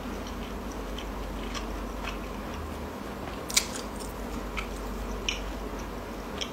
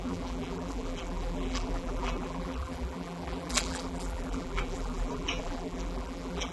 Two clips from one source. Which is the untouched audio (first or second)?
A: first